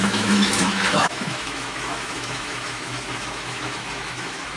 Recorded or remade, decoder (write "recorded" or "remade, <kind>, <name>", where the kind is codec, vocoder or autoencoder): remade, autoencoder, DAC-VAE